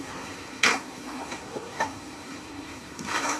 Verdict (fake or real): fake